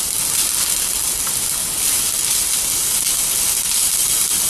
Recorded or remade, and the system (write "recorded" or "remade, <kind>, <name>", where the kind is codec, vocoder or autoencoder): recorded